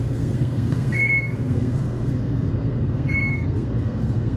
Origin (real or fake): fake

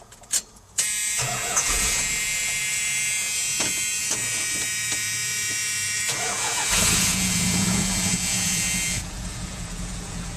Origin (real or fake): fake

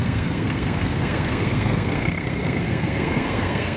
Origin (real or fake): fake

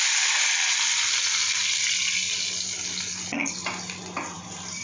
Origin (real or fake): real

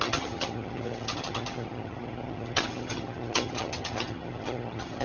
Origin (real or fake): fake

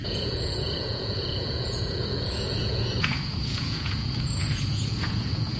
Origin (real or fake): fake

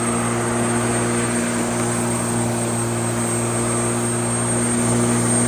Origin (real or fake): real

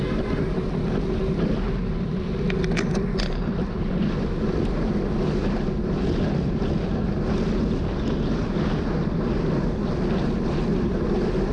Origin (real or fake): real